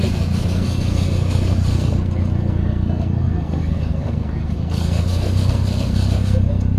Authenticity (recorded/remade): remade